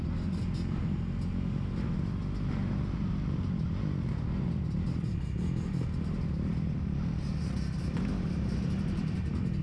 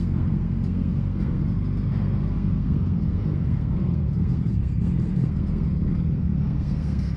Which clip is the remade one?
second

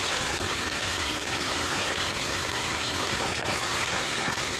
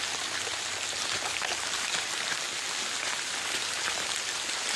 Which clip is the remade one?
first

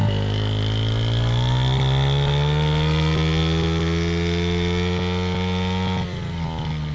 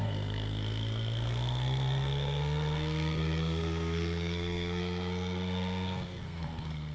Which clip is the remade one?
second